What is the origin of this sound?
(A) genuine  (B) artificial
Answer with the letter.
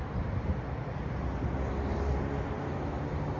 A